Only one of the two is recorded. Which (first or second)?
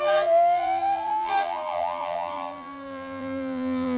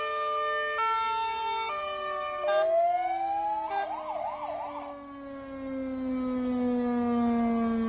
second